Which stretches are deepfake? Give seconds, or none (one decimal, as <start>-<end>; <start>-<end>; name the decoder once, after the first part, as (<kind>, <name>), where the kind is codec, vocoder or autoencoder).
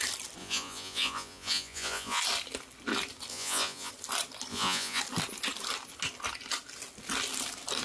0.4-2.2 (vocoder, Vocos); 3.3-3.9; 4.5-5.0